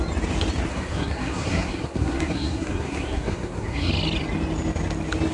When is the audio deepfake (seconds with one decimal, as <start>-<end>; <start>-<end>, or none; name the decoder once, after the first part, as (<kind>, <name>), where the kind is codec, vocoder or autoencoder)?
0.7-3.9 (codec, SNAC)